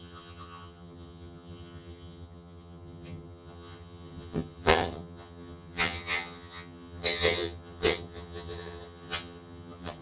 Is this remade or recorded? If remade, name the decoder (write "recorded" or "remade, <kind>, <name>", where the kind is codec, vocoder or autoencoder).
remade, vocoder, HiFi-GAN